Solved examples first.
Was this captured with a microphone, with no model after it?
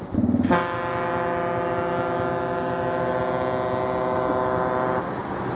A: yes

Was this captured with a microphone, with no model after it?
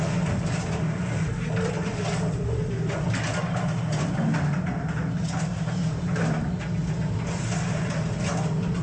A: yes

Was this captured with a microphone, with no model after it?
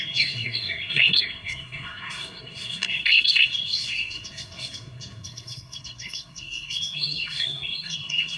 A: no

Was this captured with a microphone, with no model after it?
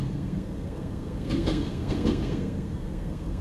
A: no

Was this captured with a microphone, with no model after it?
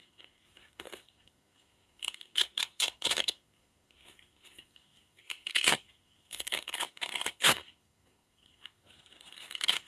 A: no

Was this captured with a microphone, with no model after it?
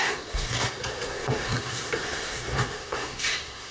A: no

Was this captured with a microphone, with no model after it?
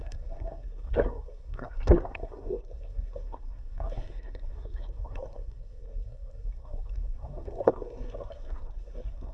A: no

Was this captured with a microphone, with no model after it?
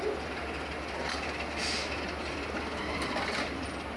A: yes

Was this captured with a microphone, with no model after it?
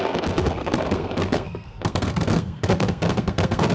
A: no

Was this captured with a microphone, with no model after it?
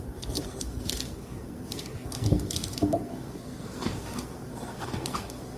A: no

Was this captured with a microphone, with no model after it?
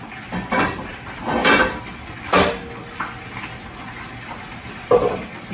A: yes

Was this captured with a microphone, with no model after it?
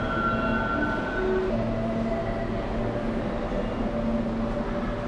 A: yes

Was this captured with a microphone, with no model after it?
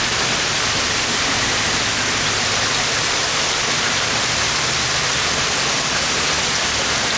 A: yes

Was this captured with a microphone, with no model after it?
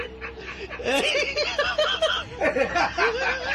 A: yes